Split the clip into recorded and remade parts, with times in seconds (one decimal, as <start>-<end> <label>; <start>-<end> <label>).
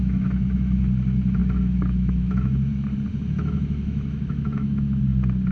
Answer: 0.0-0.8 remade; 0.8-1.4 recorded; 1.4-2.7 remade; 2.7-3.1 recorded; 3.1-5.0 remade; 5.0-5.5 recorded